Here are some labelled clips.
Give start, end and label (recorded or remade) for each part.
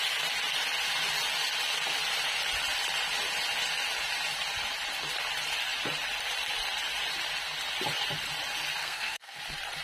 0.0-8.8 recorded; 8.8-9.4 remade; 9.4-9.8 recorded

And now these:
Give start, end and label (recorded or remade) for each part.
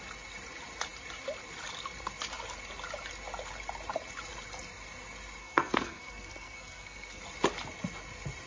0.0-5.4 recorded; 5.4-7.2 remade; 7.2-8.5 recorded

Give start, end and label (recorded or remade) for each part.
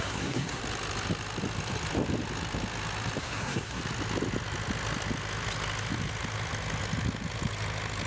0.0-0.6 remade; 0.6-3.2 recorded; 3.2-3.8 remade; 3.8-8.1 recorded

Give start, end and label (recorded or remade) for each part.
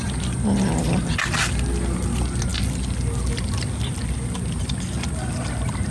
0.0-5.9 recorded